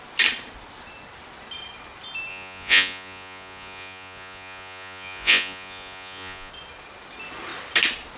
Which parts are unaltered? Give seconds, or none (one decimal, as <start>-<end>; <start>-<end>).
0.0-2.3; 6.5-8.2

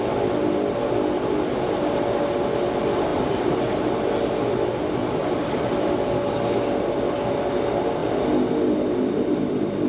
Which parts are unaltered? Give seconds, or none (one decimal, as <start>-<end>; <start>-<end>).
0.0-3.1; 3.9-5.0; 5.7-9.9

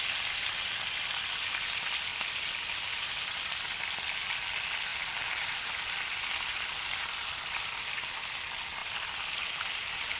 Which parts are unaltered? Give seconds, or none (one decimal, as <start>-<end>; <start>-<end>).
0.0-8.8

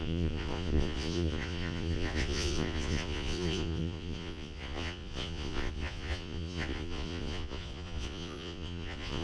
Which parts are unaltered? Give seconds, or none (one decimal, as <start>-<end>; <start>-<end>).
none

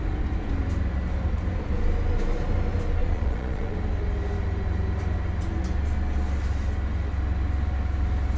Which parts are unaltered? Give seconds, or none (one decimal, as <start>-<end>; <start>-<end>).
0.0-3.0; 3.7-8.4

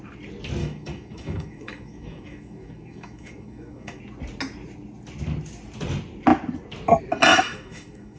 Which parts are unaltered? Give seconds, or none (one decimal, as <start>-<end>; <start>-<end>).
0.0-0.6; 4.0-7.3